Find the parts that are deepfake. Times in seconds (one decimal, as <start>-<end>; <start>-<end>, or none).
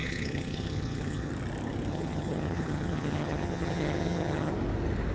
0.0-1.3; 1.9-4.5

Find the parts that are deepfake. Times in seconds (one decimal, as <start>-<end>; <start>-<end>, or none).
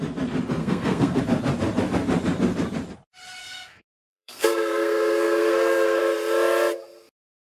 0.6-1.2; 3.4-6.0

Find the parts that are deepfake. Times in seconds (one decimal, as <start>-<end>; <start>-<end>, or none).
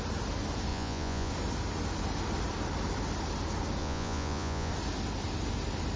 0.7-1.3; 3.8-4.7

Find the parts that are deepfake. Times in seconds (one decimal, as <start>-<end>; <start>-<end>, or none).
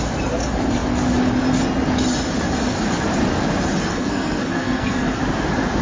3.9-5.2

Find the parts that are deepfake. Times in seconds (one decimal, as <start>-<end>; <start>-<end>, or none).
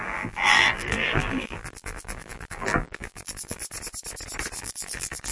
0.0-3.6; 4.6-5.3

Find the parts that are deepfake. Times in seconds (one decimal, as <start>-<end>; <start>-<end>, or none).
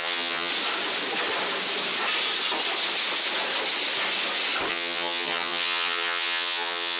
0.0-0.5; 4.7-7.0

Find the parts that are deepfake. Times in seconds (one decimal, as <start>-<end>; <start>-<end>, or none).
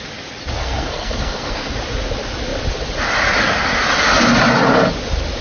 0.6-1.7